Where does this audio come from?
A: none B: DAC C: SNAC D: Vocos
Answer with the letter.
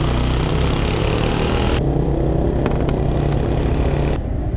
A